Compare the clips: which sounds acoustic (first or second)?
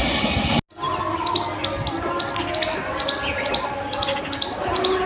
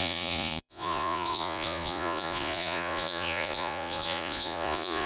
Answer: first